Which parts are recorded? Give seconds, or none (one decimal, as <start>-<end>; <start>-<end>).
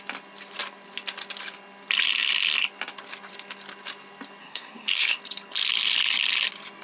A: 0.0-4.4; 5.2-6.8